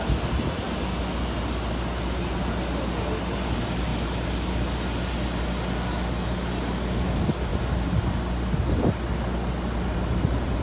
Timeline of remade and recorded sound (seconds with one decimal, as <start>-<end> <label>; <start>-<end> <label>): 0.0-10.6 recorded